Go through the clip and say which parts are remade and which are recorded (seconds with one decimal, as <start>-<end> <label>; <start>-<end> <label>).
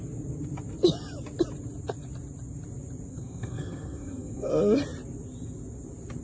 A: 0.0-3.1 recorded; 3.1-4.5 remade; 4.5-6.2 recorded